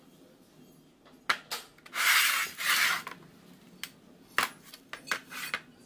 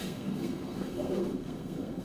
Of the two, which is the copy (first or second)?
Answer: second